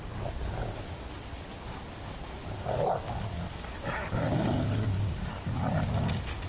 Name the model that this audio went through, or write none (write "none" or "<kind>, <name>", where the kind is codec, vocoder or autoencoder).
none